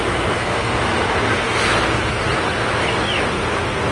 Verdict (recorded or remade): recorded